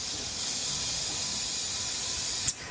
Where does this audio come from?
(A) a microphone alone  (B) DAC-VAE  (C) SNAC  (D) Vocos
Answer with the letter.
A